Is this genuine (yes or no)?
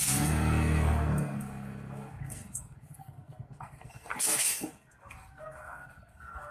no